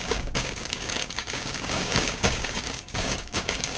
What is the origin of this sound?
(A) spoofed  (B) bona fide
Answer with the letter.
A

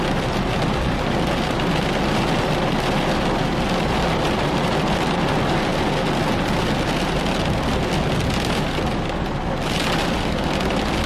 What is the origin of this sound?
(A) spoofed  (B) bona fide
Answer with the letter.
B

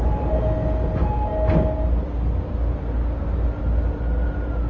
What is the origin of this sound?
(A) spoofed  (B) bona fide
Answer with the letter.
B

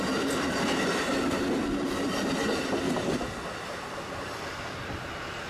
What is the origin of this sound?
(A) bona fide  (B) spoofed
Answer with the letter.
A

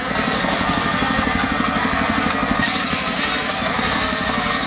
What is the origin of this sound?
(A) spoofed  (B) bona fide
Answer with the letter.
A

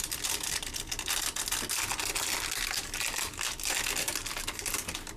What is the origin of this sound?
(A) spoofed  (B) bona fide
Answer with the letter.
B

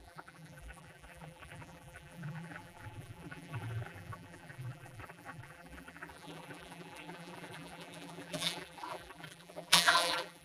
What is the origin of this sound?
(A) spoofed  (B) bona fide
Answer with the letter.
A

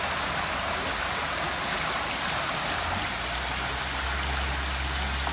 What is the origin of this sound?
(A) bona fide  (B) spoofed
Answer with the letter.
A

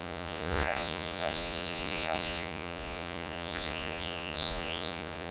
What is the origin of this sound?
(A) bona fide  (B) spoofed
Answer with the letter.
B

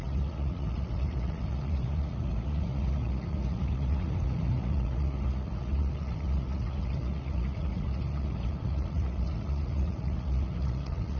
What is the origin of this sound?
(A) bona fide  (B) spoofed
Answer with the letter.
B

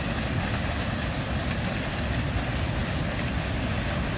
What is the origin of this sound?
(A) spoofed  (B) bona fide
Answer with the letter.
B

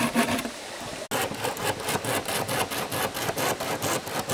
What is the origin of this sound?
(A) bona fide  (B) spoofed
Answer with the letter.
A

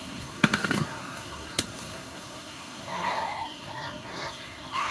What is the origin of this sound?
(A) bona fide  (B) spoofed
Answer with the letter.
B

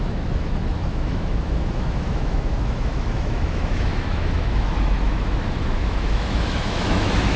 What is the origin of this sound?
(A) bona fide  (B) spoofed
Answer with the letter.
B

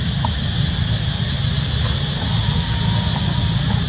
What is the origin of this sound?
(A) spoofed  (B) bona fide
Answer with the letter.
B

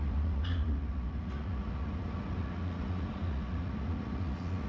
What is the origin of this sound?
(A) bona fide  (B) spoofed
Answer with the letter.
B